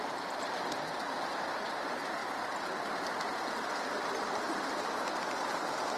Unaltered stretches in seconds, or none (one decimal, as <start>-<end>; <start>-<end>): 2.2-4.2

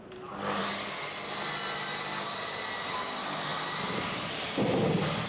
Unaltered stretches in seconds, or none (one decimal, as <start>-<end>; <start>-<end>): 0.0-3.5; 4.6-5.3

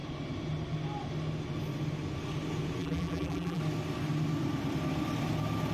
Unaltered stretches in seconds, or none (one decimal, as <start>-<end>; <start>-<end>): 0.0-2.8; 3.6-5.7

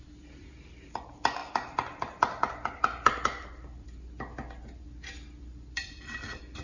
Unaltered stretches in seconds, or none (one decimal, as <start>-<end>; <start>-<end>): 1.4-5.4

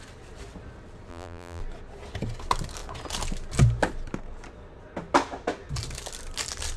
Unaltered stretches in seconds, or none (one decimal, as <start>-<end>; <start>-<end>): 0.0-1.1; 1.6-6.8

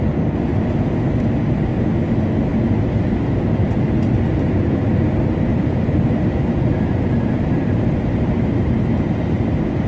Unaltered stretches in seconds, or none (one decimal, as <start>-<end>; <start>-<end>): 0.0-5.5; 9.4-9.9